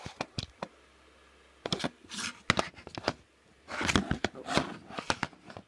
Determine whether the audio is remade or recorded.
recorded